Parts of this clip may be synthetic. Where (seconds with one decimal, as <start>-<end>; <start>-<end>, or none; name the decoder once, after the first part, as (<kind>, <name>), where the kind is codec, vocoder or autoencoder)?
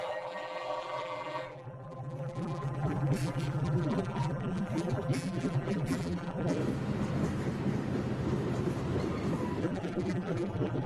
0.0-6.6 (vocoder, BigVGAN v2); 9.6-10.9